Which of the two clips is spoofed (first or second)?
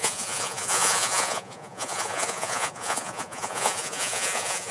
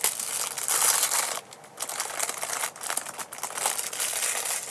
first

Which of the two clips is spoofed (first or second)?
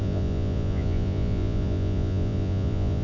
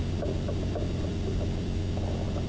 first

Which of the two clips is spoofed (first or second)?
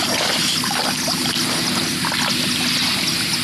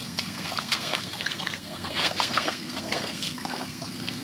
second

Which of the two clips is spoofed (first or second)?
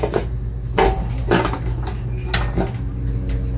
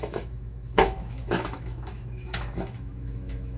second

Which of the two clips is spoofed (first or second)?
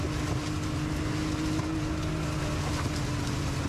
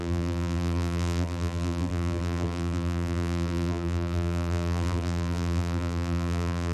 second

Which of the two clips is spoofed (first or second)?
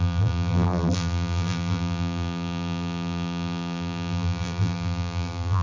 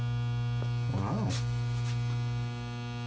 first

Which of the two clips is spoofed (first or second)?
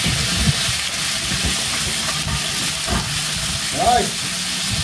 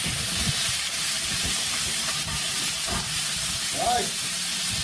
second